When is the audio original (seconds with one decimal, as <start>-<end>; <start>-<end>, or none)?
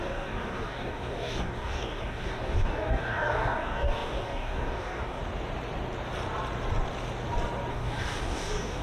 5.2-7.7